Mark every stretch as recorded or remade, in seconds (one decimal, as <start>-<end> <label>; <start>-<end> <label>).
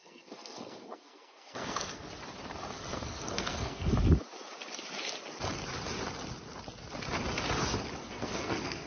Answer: 0.0-2.1 remade; 2.1-2.9 recorded; 2.9-3.9 remade; 3.9-8.0 recorded; 8.0-8.9 remade